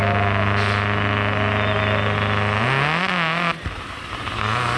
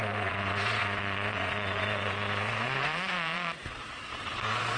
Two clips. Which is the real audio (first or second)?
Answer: first